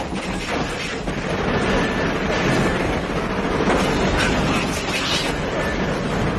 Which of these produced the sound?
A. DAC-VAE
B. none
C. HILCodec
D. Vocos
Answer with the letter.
B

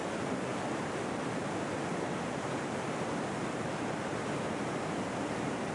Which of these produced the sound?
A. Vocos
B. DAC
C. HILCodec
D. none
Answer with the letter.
D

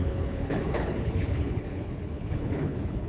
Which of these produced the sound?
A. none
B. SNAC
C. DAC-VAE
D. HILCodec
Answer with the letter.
D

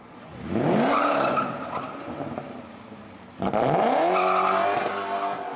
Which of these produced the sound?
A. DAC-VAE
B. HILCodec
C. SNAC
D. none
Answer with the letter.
D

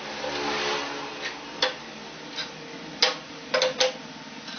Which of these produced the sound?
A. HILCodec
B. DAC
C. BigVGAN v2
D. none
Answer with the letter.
D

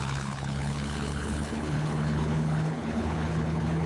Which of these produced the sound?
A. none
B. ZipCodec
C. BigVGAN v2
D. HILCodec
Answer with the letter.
D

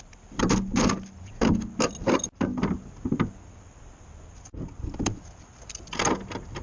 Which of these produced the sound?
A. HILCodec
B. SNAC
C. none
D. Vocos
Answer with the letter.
C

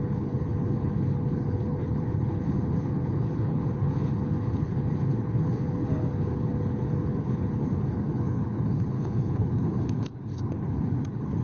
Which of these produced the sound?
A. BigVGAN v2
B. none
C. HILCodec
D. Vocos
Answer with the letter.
C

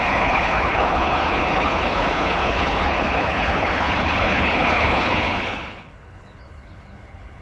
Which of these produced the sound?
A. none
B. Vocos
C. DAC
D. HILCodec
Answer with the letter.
D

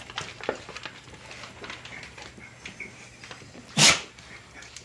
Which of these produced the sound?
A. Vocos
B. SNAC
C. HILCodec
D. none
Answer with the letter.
D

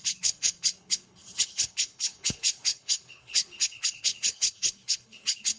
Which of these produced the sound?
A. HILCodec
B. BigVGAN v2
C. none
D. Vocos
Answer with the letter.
A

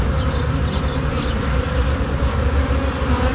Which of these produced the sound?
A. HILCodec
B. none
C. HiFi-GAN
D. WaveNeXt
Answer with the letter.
B